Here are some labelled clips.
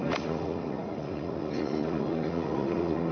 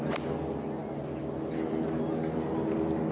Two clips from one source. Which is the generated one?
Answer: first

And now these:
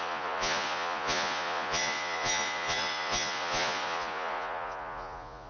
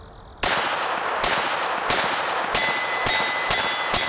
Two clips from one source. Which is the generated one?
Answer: first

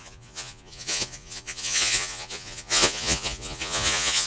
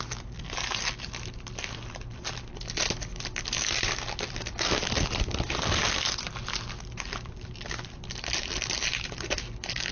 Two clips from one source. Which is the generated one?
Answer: first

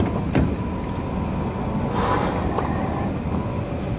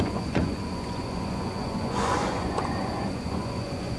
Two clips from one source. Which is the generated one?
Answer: second